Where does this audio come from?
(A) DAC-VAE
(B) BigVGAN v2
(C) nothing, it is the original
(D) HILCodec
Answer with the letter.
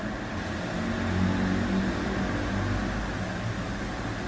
C